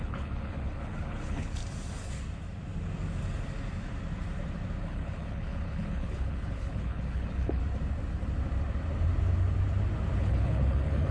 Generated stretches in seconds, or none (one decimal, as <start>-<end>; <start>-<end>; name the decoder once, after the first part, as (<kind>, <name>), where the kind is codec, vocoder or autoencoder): 0.0-1.6 (codec, HILCodec); 4.8-7.6; 10.2-11.1

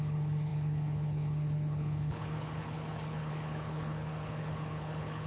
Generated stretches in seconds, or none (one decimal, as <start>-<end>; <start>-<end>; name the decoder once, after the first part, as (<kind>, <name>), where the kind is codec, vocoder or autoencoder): 0.0-5.3 (codec, HILCodec)